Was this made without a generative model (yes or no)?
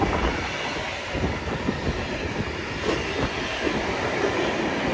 yes